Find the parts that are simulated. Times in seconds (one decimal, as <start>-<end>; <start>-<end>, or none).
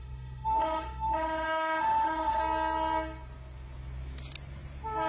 0.0-2.4